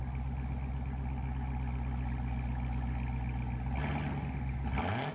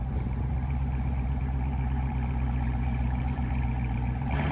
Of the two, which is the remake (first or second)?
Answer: second